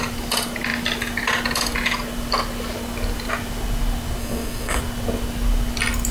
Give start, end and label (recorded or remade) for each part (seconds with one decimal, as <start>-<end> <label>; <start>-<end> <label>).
0.0-4.2 recorded; 4.2-4.8 remade; 4.8-6.1 recorded